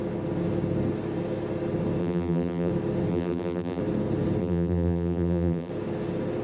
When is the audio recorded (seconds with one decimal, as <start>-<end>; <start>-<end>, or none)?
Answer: 0.0-2.0; 2.7-3.1; 3.8-4.4; 5.7-6.4